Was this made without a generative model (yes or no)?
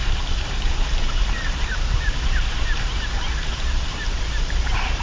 no